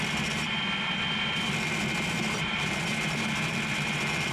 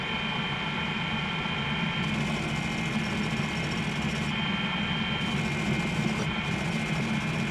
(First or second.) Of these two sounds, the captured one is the second